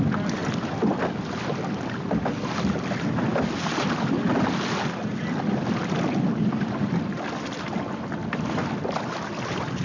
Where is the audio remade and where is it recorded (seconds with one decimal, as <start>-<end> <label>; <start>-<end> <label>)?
0.0-9.8 recorded